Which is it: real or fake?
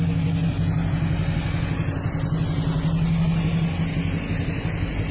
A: real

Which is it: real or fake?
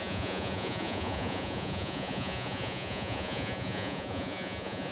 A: fake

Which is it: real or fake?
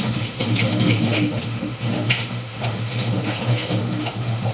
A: fake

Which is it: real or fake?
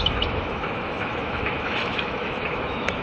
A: fake